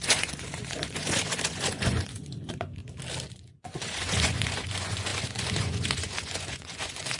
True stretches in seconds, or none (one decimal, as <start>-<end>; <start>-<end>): 2.8-3.3